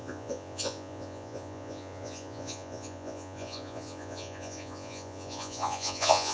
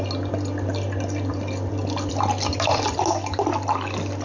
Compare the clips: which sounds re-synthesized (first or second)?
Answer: first